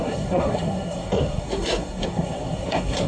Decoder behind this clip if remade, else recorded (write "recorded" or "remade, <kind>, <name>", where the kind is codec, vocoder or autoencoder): remade, codec, SNAC